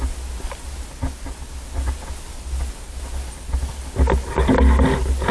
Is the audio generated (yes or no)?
no